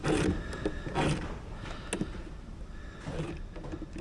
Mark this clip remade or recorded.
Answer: recorded